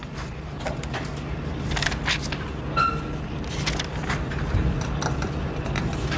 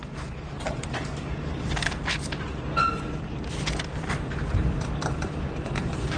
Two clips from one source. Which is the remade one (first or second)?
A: second